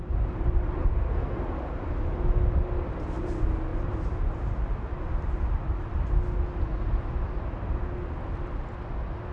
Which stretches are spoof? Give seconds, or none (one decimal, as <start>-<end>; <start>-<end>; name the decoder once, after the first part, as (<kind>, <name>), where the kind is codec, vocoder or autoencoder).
0.9-1.4 (codec, SNAC)